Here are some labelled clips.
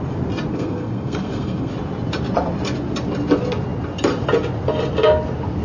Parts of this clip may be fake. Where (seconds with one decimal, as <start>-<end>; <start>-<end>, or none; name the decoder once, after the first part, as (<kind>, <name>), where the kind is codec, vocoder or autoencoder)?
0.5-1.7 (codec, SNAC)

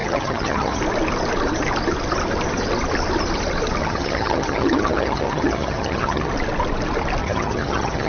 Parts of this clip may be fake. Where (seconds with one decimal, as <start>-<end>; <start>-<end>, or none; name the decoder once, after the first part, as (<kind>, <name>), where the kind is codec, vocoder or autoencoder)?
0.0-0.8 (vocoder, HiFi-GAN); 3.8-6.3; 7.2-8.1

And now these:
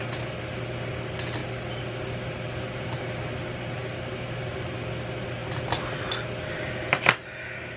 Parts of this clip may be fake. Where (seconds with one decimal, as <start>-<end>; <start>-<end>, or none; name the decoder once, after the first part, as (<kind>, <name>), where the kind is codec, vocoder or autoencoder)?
none